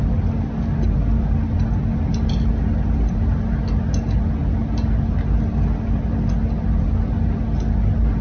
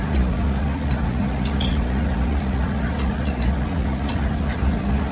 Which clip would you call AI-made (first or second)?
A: second